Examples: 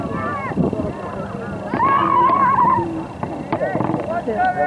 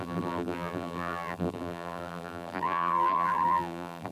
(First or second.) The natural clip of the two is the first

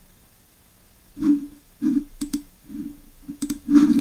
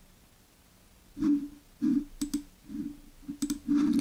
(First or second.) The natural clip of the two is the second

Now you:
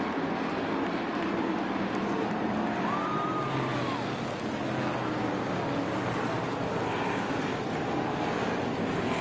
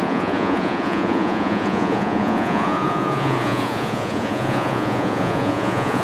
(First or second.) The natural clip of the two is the first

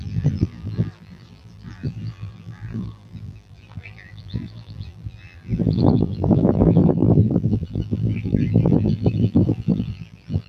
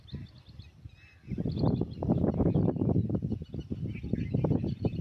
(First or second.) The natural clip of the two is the second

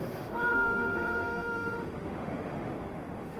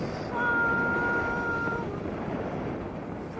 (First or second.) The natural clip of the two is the second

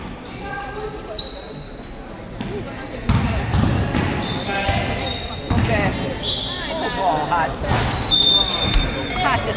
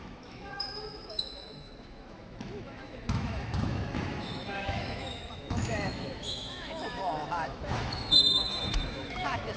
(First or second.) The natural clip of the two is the first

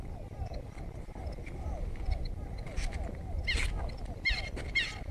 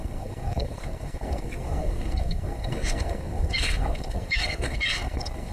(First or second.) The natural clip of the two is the first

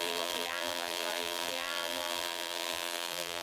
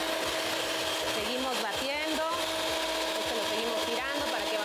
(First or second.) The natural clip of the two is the second